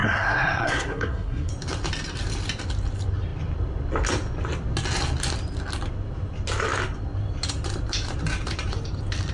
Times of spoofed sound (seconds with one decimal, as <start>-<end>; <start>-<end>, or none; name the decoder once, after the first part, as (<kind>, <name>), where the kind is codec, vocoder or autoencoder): 0.0-1.5 (codec, SNAC)